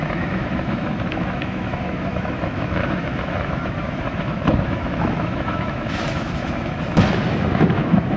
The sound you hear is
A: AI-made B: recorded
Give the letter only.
A